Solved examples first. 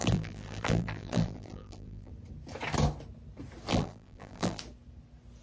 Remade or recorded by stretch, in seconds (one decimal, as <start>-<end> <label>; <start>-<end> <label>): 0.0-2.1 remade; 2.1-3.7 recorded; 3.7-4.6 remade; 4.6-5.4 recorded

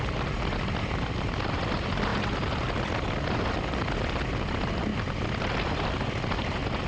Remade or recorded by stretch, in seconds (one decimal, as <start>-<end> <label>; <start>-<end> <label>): 0.0-6.9 recorded

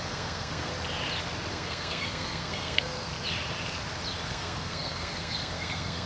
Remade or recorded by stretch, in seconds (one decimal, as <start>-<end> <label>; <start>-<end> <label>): 0.0-0.7 remade; 0.7-1.5 recorded; 1.5-3.1 remade; 3.1-4.3 recorded; 4.3-6.1 remade

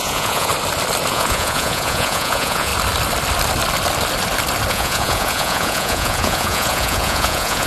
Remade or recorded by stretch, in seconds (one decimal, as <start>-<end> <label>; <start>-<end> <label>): 0.0-0.5 remade; 0.5-1.1 recorded; 1.1-2.7 remade; 2.7-4.7 recorded; 4.7-7.7 remade